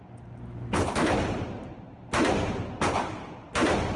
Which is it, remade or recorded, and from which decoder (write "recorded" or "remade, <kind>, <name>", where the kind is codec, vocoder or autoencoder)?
recorded